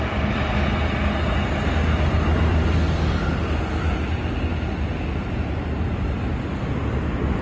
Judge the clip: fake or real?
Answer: real